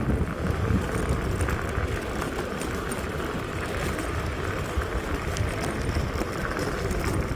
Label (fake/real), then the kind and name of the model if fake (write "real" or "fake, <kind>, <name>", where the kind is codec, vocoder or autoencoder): real